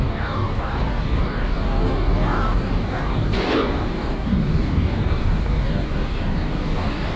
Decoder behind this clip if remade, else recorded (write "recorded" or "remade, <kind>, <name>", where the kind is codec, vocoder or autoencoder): remade, codec, DAC